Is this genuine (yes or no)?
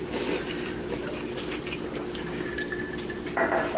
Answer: yes